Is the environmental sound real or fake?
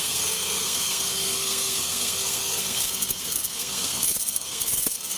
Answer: fake